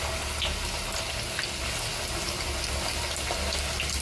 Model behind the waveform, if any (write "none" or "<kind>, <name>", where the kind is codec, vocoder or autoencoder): none